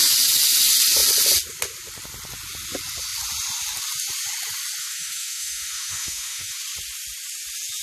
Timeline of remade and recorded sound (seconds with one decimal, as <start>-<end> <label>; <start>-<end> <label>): 0.0-4.8 recorded; 4.8-6.6 remade; 6.6-7.8 recorded